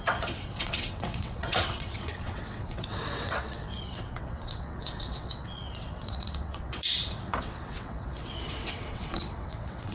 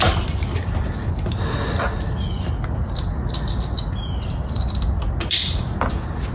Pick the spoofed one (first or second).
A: first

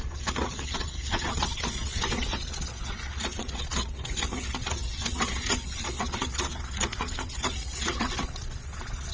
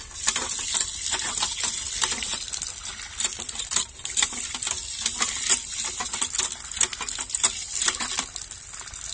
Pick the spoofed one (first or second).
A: first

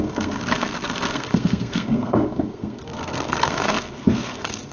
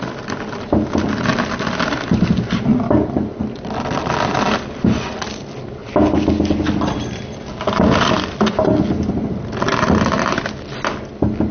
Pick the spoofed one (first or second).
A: first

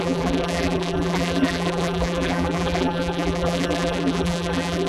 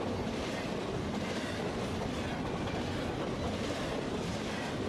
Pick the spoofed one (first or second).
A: first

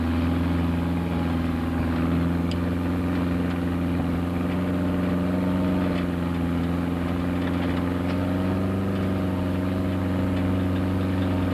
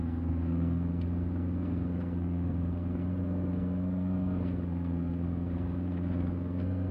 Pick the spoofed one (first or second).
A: second